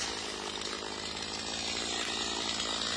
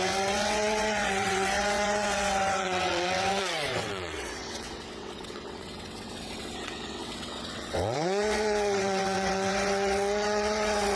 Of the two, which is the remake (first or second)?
second